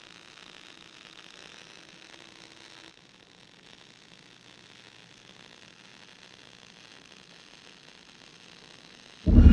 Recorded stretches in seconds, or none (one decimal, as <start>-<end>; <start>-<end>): 0.0-9.5